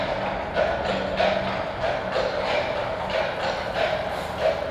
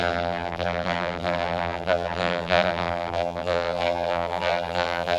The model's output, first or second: second